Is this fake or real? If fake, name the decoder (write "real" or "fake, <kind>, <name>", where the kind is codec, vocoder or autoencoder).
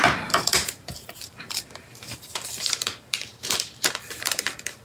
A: fake, vocoder, BigVGAN v2